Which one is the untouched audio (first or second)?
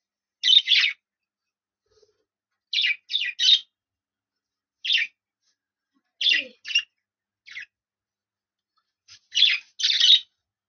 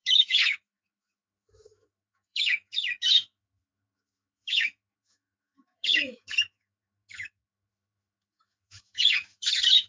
first